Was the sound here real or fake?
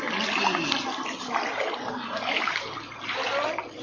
real